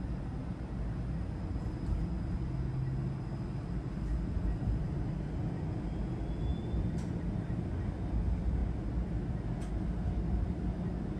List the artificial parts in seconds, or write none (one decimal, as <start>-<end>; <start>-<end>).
none